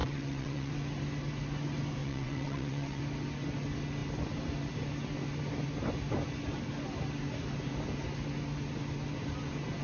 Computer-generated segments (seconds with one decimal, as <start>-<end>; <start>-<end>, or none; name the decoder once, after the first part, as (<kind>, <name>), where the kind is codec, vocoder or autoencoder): 0.0-0.7 (vocoder, WaveNeXt); 2.0-3.0